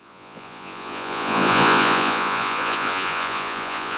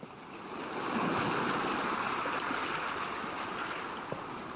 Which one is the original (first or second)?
second